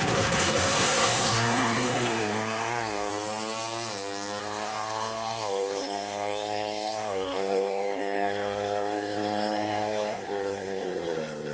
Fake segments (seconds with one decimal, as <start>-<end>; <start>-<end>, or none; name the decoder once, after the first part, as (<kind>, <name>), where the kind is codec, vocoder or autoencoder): 0.0-3.1 (codec, SNAC); 4.4-11.5